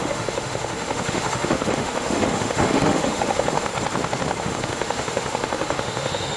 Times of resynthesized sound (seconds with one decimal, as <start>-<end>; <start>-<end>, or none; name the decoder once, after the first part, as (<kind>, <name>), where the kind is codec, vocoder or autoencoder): 0.0-3.7 (autoencoder, DAC-VAE); 4.4-6.4